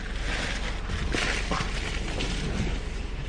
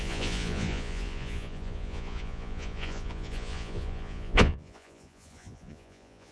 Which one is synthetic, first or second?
second